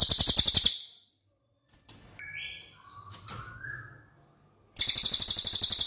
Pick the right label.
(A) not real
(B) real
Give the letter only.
B